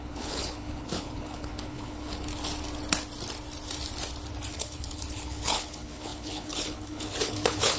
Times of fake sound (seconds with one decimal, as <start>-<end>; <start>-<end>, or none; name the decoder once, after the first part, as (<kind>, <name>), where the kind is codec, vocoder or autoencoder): 0.0-2.3 (codec, HILCodec); 4.5-7.8

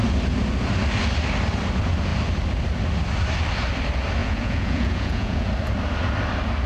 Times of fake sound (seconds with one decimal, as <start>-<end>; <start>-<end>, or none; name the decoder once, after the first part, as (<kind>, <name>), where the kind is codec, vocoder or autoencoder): 4.2-5.5 (vocoder, Vocos)

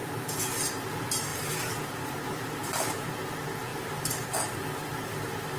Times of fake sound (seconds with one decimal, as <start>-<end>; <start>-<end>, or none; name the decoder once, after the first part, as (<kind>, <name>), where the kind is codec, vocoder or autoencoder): 1.3-3.0 (vocoder, BigVGAN v2)

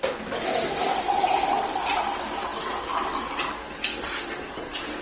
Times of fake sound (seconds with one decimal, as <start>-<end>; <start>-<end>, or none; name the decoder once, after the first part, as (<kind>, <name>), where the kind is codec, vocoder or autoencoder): 0.8-1.9 (vocoder, BigVGAN v2); 3.9-5.0

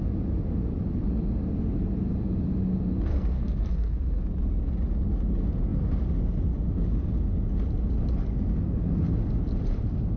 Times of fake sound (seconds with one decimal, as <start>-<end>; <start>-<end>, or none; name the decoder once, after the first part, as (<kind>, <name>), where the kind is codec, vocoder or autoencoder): 3.1-4.1 (codec, SNAC)

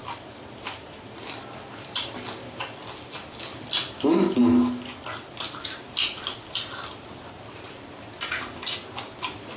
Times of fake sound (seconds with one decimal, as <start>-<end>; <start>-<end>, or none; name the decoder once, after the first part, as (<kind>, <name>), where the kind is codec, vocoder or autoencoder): none

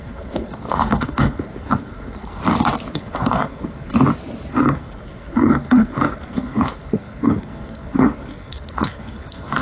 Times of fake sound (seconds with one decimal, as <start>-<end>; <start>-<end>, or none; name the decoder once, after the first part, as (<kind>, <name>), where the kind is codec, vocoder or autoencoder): 0.0-2.4 (codec, SNAC); 2.9-3.9; 4.5-9.6